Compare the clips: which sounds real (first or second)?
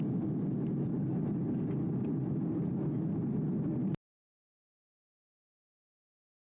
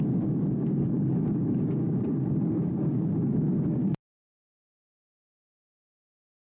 first